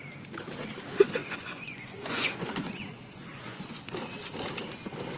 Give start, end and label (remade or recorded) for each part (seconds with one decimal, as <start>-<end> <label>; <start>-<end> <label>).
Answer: 0.0-1.2 recorded; 1.2-3.8 remade; 3.8-5.2 recorded